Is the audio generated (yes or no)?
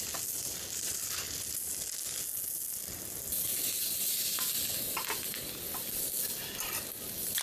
no